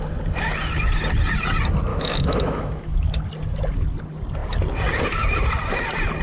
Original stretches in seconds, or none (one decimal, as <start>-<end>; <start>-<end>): 0.0-1.9; 3.2-6.2